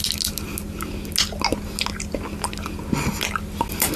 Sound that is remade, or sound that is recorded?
recorded